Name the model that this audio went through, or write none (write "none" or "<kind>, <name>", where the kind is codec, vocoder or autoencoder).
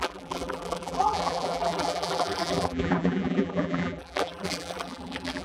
vocoder, BigVGAN v2